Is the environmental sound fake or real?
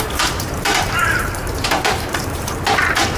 fake